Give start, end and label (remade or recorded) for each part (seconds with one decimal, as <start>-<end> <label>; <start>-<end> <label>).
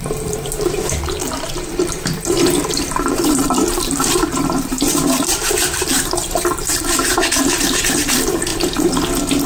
0.0-8.5 remade; 8.5-9.5 recorded